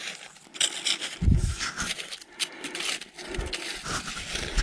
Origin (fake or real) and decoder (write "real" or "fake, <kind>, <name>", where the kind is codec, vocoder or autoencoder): real